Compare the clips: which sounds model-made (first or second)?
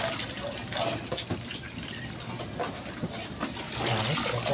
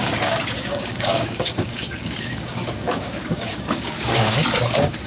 second